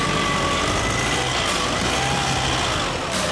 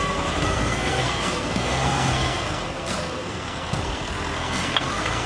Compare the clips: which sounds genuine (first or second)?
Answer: first